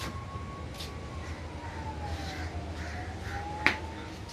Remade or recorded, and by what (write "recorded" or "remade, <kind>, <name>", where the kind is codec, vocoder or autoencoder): recorded